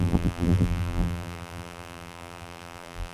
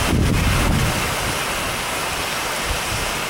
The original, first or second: second